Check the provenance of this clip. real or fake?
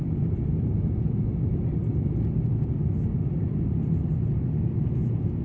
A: real